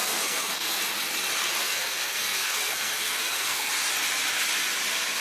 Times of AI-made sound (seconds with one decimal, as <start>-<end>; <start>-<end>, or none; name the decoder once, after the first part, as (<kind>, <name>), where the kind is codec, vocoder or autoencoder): 0.0-0.8 (codec, SNAC); 1.6-3.7